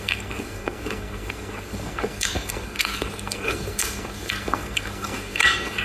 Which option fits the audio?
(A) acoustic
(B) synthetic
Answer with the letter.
B